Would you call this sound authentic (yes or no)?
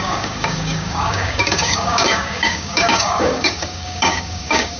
no